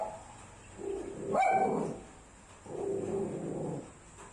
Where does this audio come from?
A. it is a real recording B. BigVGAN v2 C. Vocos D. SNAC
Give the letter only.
A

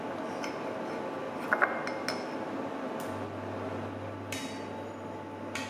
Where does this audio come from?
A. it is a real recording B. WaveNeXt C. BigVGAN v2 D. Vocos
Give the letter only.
A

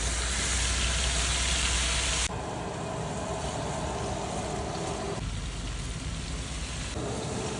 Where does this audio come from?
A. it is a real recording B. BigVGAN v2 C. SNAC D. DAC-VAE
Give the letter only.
A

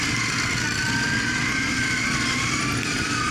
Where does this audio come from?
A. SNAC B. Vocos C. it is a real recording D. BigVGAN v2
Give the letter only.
C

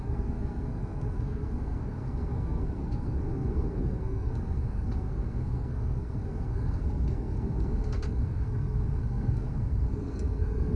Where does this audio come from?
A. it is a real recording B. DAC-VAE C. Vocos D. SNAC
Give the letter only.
D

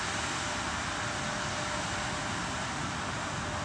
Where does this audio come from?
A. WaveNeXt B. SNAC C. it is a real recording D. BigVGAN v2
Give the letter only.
C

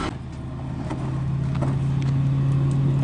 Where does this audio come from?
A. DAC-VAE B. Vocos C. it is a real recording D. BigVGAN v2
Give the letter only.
C